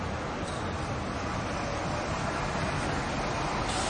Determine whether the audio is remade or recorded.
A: recorded